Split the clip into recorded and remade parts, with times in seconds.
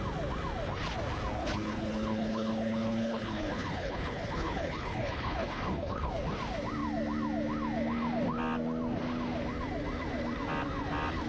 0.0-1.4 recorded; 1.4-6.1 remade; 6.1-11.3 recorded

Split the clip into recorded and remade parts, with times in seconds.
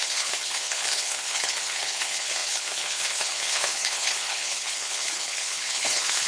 0.0-6.3 remade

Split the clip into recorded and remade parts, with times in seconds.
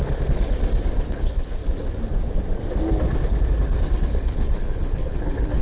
0.0-0.6 remade; 0.6-1.1 recorded; 1.1-1.6 remade; 1.6-4.0 recorded; 4.0-5.6 remade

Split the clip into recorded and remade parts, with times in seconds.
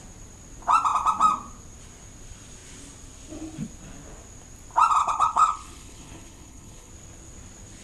0.0-5.0 recorded; 5.0-6.9 remade; 6.9-7.8 recorded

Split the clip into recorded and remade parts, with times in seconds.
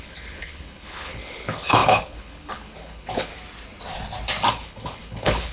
0.0-3.3 remade; 3.3-4.5 recorded; 4.5-5.5 remade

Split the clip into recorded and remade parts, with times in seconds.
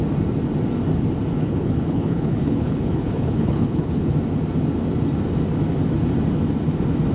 0.0-1.4 recorded; 1.4-4.1 remade; 4.1-7.1 recorded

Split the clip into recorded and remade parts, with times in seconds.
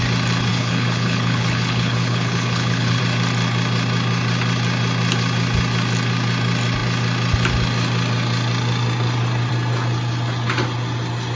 0.0-0.5 recorded; 0.5-3.0 remade; 3.0-11.4 recorded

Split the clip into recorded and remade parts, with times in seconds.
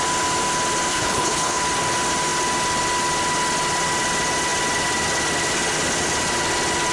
0.0-0.9 recorded; 0.9-1.6 remade; 1.6-6.9 recorded